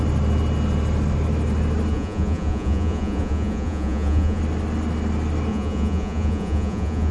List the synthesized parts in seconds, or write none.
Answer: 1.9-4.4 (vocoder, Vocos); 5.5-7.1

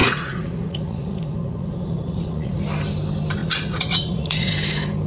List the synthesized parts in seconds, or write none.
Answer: 0.0-2.6 (vocoder, Vocos); 3.4-4.5

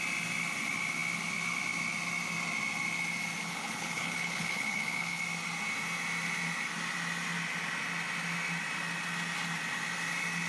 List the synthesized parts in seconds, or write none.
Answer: 3.4-5.2 (codec, HILCodec)

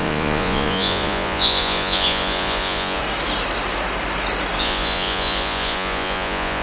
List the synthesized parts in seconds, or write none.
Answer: 0.0-3.0 (vocoder, Vocos); 4.6-6.6

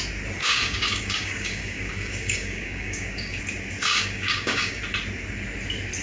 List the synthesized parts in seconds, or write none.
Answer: 0.4-3.4 (codec, DAC); 3.8-4.8

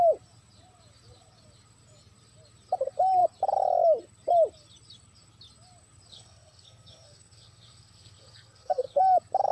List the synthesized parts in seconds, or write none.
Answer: 6.1-9.0 (codec, SNAC)

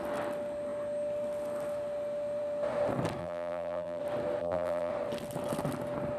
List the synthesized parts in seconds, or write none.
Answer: 3.2-4.0 (vocoder, BigVGAN v2); 4.4-4.9